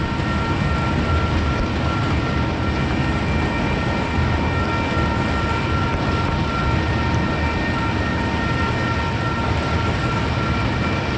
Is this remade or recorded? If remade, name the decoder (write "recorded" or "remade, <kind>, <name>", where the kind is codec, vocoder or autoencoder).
recorded